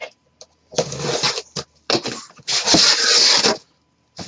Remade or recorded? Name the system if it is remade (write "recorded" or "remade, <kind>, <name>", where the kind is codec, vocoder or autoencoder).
recorded